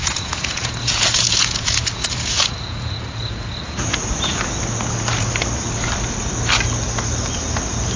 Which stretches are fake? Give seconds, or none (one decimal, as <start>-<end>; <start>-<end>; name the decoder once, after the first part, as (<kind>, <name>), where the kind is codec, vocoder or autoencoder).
0.0-4.4 (vocoder, Vocos)